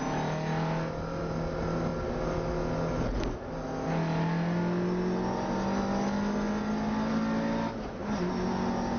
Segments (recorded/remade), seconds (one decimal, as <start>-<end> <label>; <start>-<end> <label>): 0.0-9.0 recorded